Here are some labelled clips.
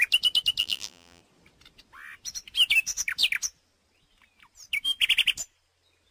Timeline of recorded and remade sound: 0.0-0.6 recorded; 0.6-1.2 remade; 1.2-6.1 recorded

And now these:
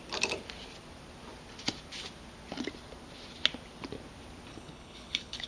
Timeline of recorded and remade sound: 0.0-4.5 recorded; 4.5-5.5 remade